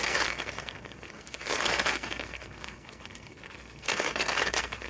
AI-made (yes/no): yes